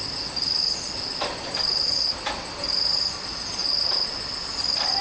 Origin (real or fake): real